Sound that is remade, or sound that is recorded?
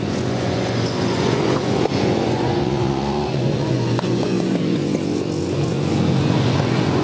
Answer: remade